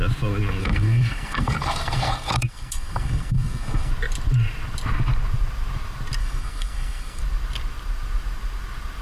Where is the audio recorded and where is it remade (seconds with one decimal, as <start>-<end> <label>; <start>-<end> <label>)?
0.0-0.6 recorded; 0.6-3.9 remade; 3.9-6.2 recorded; 6.2-7.2 remade; 7.2-9.0 recorded